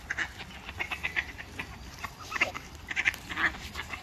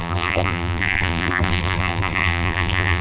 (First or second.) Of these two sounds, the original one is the first